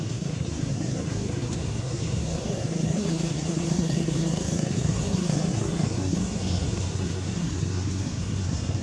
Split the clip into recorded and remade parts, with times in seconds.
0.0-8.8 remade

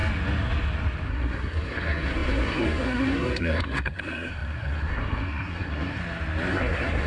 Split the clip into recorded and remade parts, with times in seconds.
0.0-1.1 recorded; 1.1-6.0 remade; 6.0-6.5 recorded; 6.5-7.1 remade

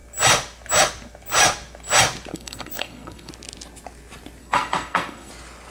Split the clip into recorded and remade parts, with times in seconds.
0.0-2.3 recorded; 2.3-3.3 remade; 3.3-4.4 recorded; 4.4-5.3 remade; 5.3-5.7 recorded

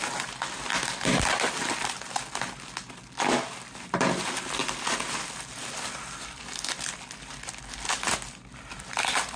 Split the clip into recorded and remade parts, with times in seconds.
0.0-9.4 recorded

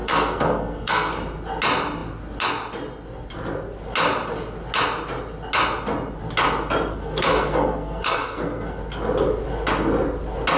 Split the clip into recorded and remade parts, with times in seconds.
0.0-1.1 remade; 1.1-6.9 recorded; 6.9-8.8 remade; 8.8-10.6 recorded

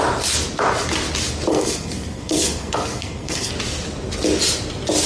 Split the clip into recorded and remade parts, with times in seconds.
0.0-1.5 recorded; 1.5-3.5 remade; 3.5-5.1 recorded